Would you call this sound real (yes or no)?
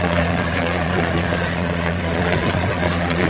no